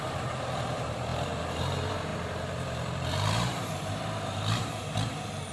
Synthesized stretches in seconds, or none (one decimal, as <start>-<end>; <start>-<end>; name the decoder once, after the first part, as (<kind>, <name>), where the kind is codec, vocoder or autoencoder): 0.0-5.5 (vocoder, BigVGAN v2)